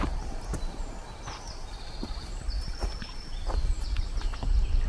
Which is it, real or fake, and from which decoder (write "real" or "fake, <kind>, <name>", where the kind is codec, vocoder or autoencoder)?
real